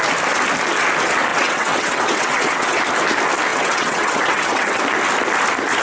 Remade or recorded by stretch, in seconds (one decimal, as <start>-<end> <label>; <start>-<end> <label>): 0.0-1.3 recorded; 1.3-2.8 remade; 2.8-3.5 recorded; 3.5-4.8 remade; 4.8-5.8 recorded